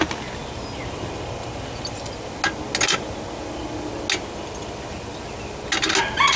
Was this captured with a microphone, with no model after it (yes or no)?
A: yes